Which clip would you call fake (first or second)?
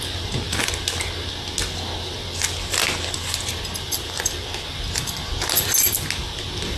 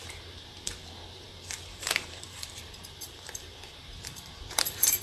second